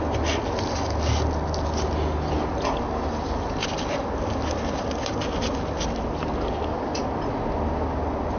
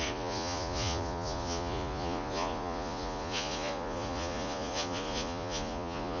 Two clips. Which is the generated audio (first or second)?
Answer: second